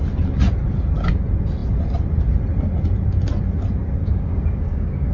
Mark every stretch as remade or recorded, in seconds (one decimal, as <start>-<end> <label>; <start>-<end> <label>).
0.0-4.0 recorded; 4.0-5.1 remade